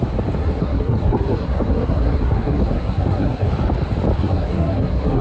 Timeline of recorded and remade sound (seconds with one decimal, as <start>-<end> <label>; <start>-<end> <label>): 0.0-0.4 recorded; 0.4-3.5 remade; 3.5-4.2 recorded; 4.2-5.2 remade